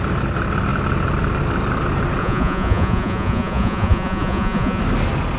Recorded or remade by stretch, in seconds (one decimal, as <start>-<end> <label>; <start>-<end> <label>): 0.0-2.2 recorded; 2.2-4.8 remade; 4.8-5.4 recorded

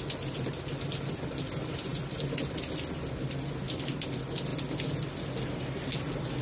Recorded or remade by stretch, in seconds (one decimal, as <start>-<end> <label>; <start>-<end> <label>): 0.0-6.4 recorded

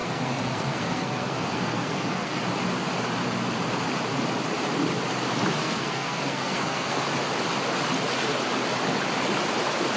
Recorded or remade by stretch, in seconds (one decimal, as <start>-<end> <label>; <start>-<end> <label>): 0.0-2.4 remade; 2.4-5.6 recorded; 5.6-7.0 remade; 7.0-10.0 recorded

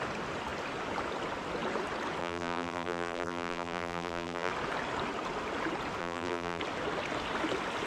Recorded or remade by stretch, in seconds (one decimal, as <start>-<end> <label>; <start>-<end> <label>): 0.0-2.2 recorded; 2.2-4.5 remade; 4.5-6.0 recorded; 6.0-6.6 remade; 6.6-7.9 recorded

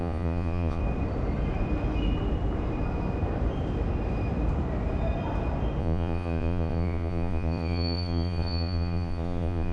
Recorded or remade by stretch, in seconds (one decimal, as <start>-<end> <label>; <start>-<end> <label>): 0.0-0.8 remade; 0.8-5.8 recorded; 5.8-9.7 remade

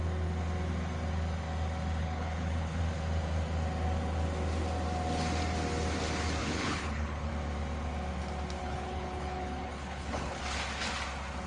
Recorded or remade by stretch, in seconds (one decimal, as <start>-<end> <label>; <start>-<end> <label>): 0.0-2.0 recorded; 2.0-2.8 remade; 2.8-6.4 recorded; 6.4-7.3 remade; 7.3-8.6 recorded; 8.6-10.4 remade; 10.4-11.5 recorded